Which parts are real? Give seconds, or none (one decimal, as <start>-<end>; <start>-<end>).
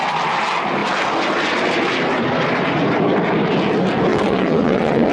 0.0-4.1